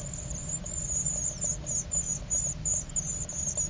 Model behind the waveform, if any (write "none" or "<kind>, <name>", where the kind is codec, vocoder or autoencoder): none